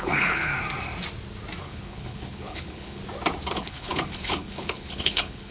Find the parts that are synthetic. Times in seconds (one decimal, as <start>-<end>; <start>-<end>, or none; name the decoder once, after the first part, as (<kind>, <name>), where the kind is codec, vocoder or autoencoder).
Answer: 0.0-0.5 (codec, HILCodec); 1.6-3.0; 3.5-5.5